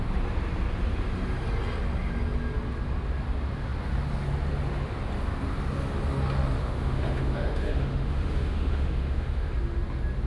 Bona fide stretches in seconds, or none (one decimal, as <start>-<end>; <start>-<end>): 0.0-6.6; 9.5-10.3